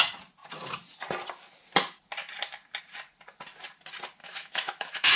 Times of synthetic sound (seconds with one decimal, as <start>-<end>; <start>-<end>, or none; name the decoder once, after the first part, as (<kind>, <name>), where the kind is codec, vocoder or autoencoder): 4.2-5.2 (autoencoder, DAC-VAE)